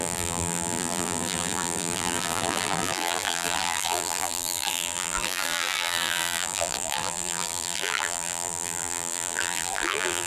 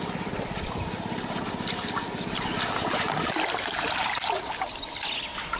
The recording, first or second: second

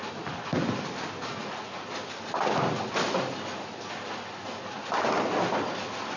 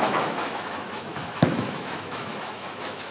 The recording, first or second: first